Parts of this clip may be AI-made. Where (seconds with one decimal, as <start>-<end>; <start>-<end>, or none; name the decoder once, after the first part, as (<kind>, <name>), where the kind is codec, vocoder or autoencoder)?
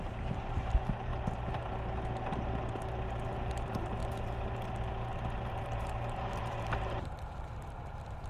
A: 0.0-1.1 (vocoder, BigVGAN v2); 3.4-4.0; 5.1-8.3